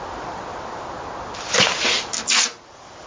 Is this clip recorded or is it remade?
recorded